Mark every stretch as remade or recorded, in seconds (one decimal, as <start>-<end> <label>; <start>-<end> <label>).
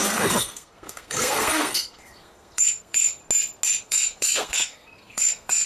0.0-3.2 remade; 3.2-3.8 recorded; 3.8-5.7 remade